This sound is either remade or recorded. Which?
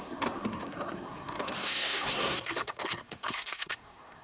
remade